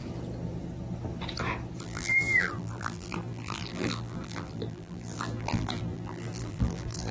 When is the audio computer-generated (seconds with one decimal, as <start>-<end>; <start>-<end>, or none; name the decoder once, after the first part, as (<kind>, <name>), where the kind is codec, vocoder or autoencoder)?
1.8-7.1 (vocoder, BigVGAN v2)